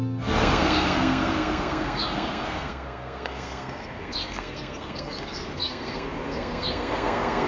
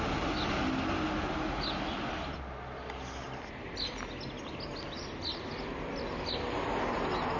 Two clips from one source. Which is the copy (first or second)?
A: first